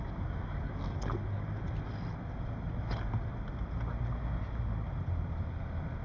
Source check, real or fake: real